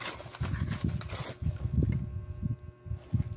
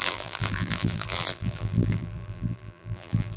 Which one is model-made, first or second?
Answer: second